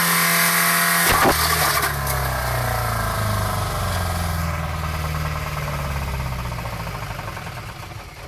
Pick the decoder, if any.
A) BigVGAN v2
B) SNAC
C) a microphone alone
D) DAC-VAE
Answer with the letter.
C